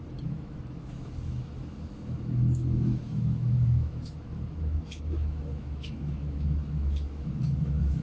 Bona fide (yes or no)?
no